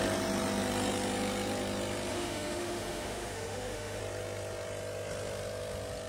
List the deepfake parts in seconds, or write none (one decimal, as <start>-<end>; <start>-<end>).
2.1-4.0